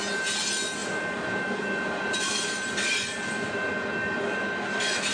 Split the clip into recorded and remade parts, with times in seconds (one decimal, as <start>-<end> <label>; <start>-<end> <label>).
0.0-0.8 recorded; 0.8-3.7 remade; 3.7-5.1 recorded